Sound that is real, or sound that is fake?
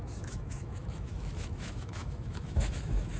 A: fake